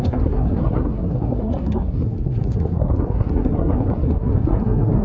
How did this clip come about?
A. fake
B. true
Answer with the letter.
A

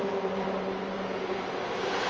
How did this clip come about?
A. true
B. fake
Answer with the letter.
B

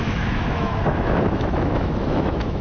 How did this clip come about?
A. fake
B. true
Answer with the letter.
A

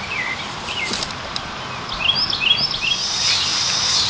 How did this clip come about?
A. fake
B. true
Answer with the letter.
B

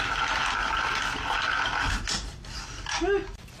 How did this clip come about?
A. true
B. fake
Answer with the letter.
A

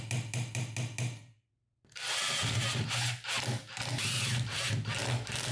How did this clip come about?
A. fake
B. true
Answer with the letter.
B